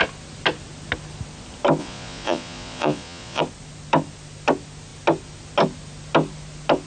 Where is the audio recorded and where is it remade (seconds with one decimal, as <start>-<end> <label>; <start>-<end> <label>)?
0.0-1.8 recorded; 1.8-3.4 remade; 3.4-6.9 recorded